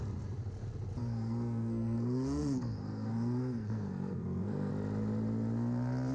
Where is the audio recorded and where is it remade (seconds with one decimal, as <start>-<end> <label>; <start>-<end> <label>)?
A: 0.0-1.0 recorded; 1.0-4.7 remade; 4.7-6.1 recorded